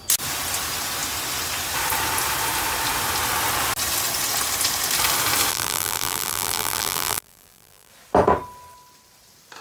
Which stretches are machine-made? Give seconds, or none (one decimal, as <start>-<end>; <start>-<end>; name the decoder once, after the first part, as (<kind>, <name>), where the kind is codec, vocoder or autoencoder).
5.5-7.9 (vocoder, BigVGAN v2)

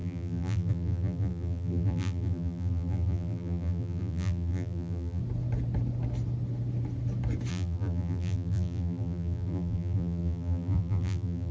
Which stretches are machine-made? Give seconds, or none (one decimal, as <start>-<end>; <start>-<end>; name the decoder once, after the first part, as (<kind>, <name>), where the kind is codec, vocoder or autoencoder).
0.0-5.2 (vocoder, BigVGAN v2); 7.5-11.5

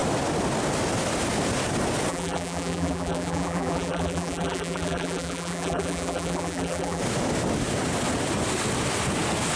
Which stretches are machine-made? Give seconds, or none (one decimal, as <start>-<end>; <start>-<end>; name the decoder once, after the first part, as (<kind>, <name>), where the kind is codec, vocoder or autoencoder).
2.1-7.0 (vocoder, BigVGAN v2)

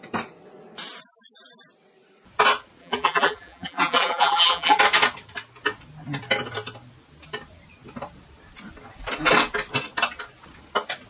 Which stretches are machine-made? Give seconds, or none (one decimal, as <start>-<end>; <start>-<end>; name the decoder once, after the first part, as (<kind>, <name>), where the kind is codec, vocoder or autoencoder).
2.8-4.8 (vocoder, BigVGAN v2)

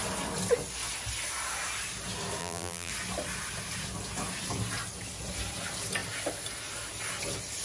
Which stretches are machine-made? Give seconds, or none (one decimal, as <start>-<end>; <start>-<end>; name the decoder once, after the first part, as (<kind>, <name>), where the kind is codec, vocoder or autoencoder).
2.4-2.9 (vocoder, BigVGAN v2)

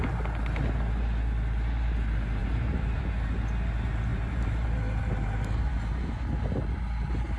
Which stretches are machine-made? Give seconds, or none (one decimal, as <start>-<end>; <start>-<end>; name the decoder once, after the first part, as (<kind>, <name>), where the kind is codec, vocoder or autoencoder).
2.4-3.0 (vocoder, BigVGAN v2); 4.1-6.1